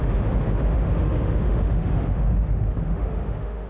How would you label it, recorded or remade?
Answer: remade